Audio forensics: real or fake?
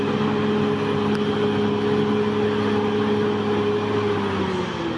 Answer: real